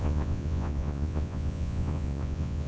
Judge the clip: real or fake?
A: fake